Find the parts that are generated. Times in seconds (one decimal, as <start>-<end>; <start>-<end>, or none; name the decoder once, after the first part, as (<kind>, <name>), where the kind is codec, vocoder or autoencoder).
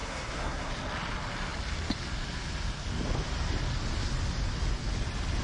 0.0-0.7 (codec, SNAC)